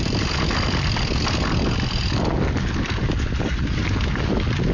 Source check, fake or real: real